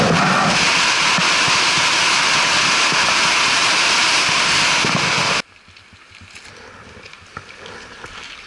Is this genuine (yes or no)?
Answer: yes